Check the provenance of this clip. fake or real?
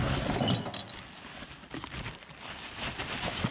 real